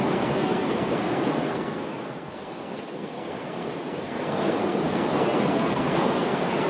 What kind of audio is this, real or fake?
fake